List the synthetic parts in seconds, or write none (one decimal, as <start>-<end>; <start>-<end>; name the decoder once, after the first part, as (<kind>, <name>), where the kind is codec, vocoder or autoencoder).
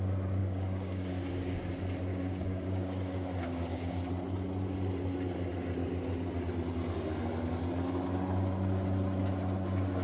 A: 0.4-1.6 (codec, DAC); 2.1-4.1